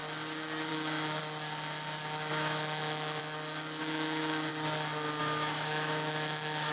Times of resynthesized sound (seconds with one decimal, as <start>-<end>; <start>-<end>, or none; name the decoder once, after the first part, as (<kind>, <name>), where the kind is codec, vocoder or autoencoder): 0.7-1.2 (autoencoder, DAC-VAE); 2.3-3.2; 3.8-4.5; 5.2-6.7